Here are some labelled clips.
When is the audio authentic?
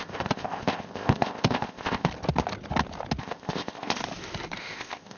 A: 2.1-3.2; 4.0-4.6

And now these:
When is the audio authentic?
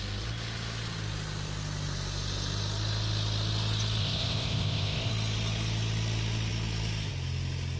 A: 0.0-4.0; 5.1-7.8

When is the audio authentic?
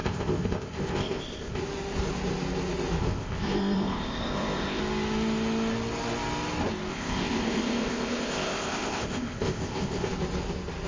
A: 1.6-3.0; 4.8-6.9; 10.1-10.9